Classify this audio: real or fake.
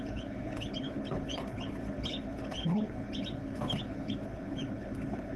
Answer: fake